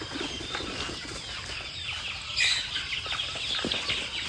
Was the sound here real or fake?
real